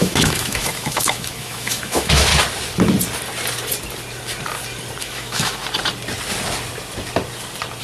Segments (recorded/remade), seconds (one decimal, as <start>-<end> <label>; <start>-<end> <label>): 0.0-2.3 remade; 2.3-5.0 recorded; 5.0-5.6 remade; 5.6-7.8 recorded